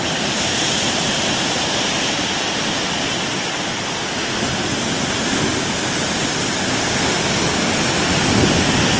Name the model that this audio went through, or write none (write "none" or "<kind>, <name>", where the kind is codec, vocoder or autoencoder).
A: none